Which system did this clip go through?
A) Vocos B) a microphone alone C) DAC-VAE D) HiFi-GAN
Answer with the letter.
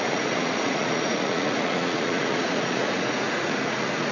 A